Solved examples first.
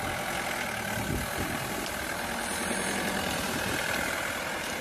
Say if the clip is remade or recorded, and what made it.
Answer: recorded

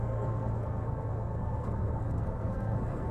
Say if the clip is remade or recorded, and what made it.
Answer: remade, codec, SNAC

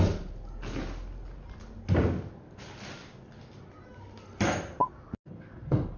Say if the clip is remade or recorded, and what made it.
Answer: recorded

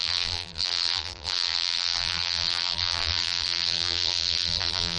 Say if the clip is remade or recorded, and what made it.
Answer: remade, vocoder, BigVGAN v2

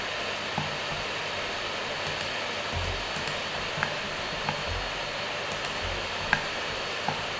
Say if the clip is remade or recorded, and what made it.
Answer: recorded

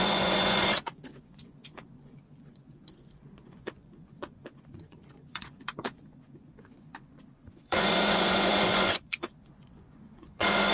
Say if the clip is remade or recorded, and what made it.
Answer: remade, vocoder, Vocos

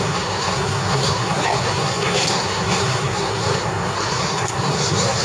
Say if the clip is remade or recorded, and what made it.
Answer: remade, codec, SNAC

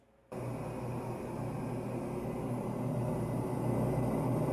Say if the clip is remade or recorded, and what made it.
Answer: recorded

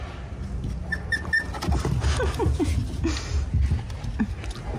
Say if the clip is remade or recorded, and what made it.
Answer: recorded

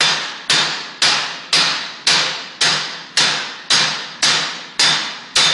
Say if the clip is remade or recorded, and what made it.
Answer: recorded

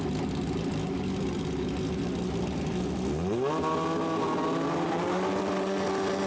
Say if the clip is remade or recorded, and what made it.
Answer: recorded